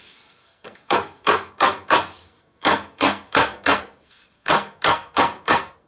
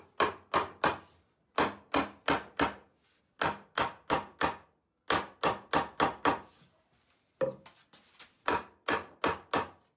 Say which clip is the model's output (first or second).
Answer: first